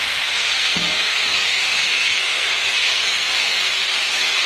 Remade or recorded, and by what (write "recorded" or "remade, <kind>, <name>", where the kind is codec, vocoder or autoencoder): remade, codec, SNAC